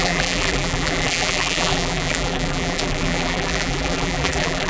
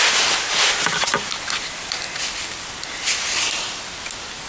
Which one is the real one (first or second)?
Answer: second